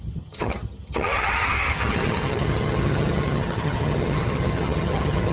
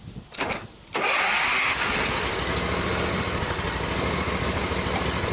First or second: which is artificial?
first